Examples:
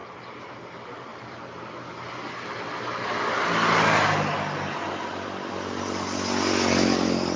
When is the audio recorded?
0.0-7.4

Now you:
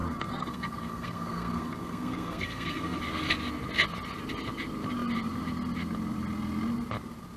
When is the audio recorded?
3.0-7.4

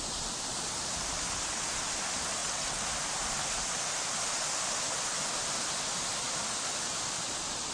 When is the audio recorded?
0.0-2.4; 2.9-7.7

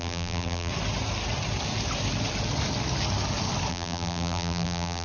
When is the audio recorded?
0.7-3.7

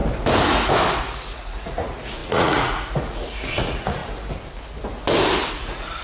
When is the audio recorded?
0.0-1.0; 4.0-5.5

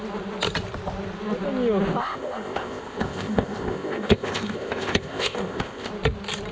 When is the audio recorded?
0.0-2.0; 5.9-6.5

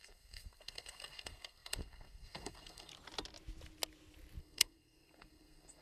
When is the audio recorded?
2.9-4.4